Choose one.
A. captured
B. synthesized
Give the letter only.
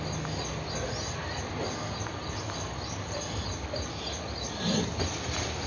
A